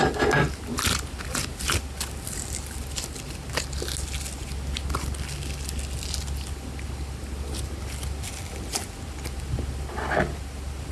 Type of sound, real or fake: real